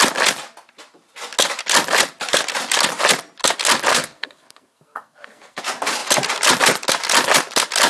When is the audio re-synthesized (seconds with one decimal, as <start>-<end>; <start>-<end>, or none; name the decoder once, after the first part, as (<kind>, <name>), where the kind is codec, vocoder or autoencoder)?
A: 3.9-5.6 (codec, SNAC)